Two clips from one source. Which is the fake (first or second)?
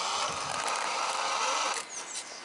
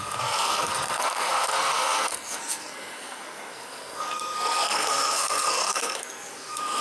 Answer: second